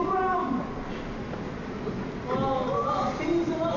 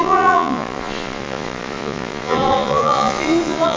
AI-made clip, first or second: second